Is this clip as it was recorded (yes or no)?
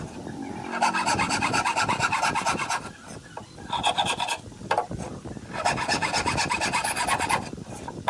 yes